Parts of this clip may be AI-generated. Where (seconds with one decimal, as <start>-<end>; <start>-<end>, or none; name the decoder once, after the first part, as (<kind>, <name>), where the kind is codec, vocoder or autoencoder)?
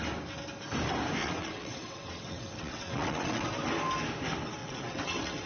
1.2-3.5 (vocoder, WaveNeXt); 4.6-5.5